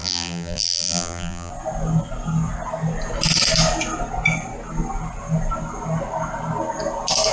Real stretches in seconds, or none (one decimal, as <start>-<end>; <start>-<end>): 1.5-7.3